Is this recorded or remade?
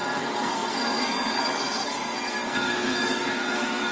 remade